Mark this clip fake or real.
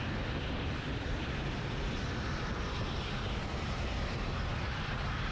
fake